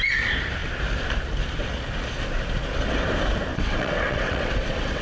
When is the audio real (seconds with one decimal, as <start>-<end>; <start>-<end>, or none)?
0.0-3.5